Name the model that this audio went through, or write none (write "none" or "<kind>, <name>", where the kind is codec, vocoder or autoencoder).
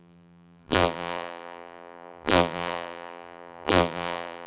vocoder, BigVGAN v2